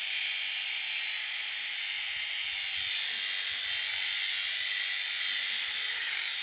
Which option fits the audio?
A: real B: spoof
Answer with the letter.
A